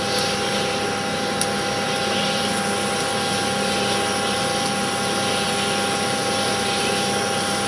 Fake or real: real